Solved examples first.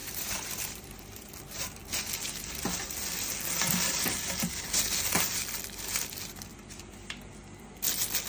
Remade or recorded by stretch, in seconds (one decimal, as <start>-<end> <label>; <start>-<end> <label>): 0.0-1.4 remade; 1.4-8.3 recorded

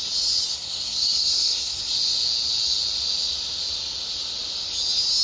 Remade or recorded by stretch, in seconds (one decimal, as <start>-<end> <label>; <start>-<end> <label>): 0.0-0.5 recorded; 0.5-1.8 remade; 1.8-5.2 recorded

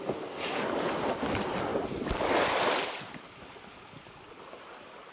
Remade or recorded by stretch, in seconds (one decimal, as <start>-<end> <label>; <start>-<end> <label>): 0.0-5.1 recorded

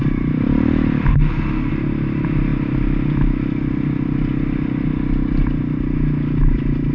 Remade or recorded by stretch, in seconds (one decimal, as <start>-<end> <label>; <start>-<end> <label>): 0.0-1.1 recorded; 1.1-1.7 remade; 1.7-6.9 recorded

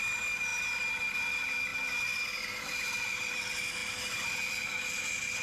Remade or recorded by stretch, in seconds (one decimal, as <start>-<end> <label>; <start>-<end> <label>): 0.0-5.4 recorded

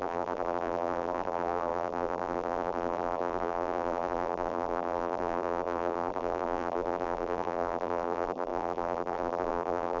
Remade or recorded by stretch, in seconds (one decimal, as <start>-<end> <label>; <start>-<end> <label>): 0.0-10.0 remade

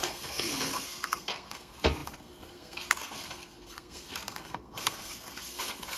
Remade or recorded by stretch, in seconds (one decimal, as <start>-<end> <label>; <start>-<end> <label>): 0.0-6.0 remade

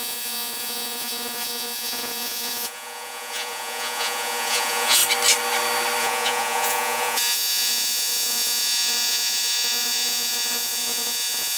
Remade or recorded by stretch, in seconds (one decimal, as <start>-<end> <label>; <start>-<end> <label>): 0.0-5.0 remade; 5.0-6.0 recorded; 6.0-11.6 remade